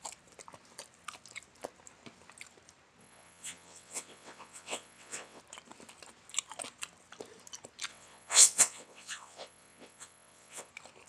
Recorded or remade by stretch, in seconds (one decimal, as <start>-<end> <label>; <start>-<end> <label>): 0.0-3.0 recorded; 3.0-5.4 remade; 5.4-7.9 recorded; 7.9-10.7 remade; 10.7-11.1 recorded